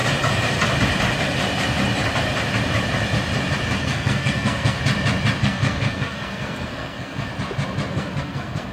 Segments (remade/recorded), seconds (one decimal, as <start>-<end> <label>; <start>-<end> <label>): 0.0-3.8 recorded; 3.8-4.8 remade; 4.8-5.4 recorded; 5.4-7.3 remade; 7.3-7.9 recorded; 7.9-8.7 remade